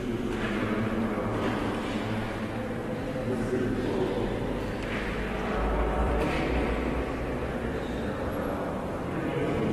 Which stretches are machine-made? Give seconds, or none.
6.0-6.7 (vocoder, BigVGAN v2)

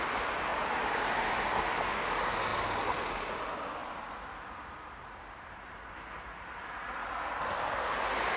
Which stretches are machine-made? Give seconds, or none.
0.5-1.3 (vocoder, BigVGAN v2); 7.0-8.4

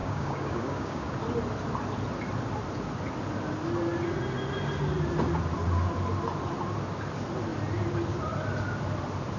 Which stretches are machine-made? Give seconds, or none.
0.0-1.1 (codec, DAC)